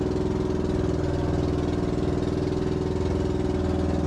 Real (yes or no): yes